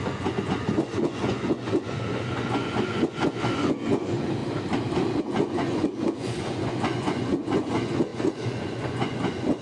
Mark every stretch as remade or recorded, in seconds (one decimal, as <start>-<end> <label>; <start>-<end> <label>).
0.0-4.4 remade; 4.4-5.2 recorded; 5.2-9.6 remade